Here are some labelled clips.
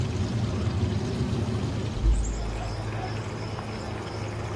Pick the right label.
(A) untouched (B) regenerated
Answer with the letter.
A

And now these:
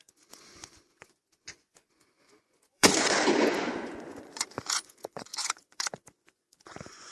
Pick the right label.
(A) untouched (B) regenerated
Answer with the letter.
B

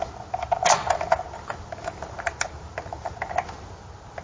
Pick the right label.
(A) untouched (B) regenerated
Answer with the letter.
A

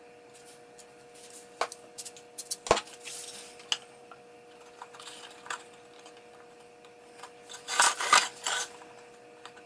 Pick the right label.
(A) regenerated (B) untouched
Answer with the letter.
B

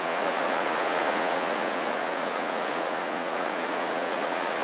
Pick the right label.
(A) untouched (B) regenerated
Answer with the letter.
B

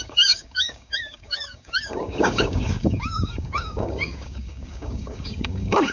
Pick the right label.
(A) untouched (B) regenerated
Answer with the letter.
B